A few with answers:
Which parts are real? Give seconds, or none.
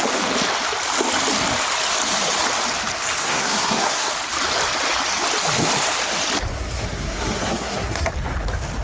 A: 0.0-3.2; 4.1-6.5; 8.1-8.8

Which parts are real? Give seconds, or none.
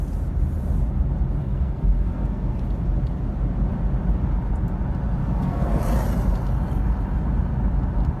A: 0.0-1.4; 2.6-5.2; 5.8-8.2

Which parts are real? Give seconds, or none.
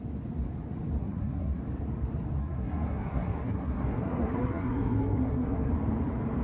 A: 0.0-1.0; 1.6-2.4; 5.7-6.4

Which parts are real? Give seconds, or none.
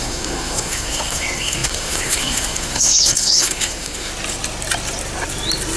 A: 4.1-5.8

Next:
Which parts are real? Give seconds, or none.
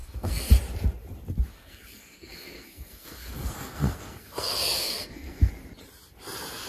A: 0.5-1.5; 5.5-6.7